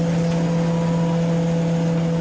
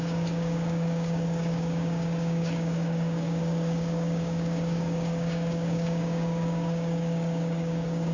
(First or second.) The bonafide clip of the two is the first